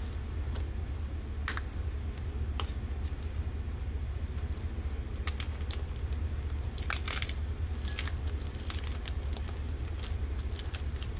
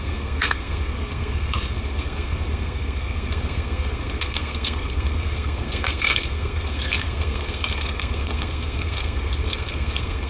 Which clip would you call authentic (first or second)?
first